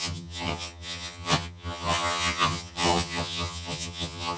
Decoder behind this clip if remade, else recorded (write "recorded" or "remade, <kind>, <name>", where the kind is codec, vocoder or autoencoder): remade, vocoder, HiFi-GAN